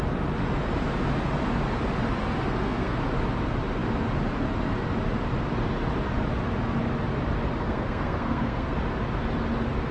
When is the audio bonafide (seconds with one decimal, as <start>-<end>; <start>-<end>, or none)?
0.0-2.5; 3.0-7.6; 8.8-9.9